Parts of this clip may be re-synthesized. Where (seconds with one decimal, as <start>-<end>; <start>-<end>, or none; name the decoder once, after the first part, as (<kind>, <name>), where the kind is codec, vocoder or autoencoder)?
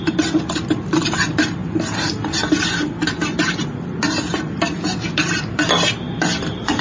none